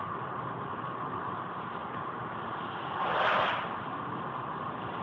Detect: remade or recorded recorded